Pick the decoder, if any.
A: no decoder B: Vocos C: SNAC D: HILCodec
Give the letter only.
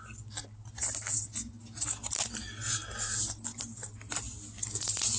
A